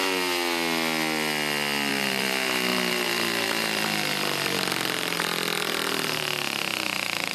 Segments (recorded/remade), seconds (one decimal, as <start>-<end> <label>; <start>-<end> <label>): 0.0-1.9 recorded; 1.9-7.3 remade